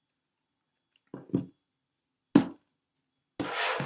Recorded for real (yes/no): yes